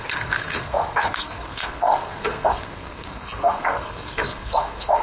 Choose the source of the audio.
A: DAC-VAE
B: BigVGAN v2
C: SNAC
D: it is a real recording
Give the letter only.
C